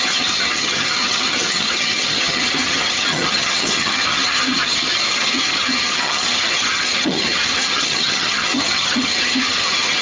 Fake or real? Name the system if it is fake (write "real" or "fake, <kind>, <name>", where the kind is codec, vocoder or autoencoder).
fake, vocoder, HiFi-GAN